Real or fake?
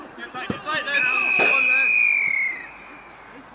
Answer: real